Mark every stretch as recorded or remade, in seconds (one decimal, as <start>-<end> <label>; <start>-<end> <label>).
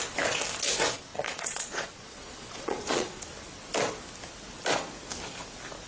0.0-1.1 recorded; 1.1-3.2 remade; 3.2-5.9 recorded